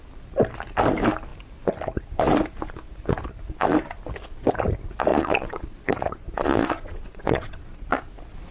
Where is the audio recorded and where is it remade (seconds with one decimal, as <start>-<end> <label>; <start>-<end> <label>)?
0.0-5.1 recorded; 5.1-8.0 remade; 8.0-8.5 recorded

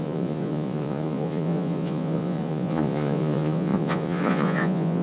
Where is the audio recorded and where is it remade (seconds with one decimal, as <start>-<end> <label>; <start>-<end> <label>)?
0.0-5.0 remade